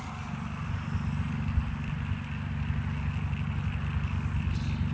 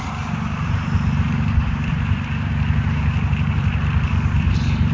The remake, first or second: second